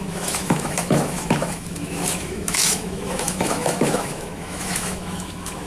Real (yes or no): no